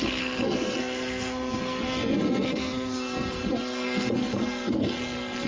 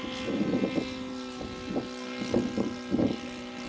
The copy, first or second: first